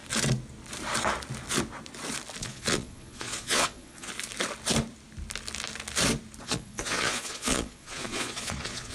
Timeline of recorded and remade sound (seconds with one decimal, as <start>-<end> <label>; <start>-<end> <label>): 0.0-2.4 recorded; 2.4-4.1 remade; 4.1-6.4 recorded; 6.4-8.9 remade